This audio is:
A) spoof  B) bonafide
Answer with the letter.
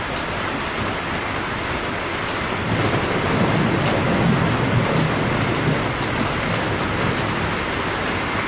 B